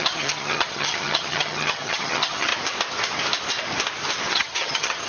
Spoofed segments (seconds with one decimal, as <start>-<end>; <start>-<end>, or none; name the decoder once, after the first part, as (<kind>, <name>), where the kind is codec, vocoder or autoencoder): 0.0-2.5 (vocoder, HiFi-GAN); 4.3-5.1